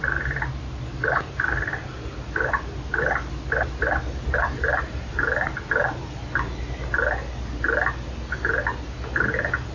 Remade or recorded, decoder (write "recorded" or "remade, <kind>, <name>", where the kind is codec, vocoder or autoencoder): recorded